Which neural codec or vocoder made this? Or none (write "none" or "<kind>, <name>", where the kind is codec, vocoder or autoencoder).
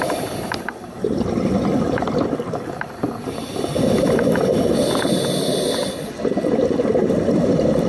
none